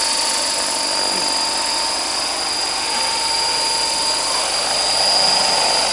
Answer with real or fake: real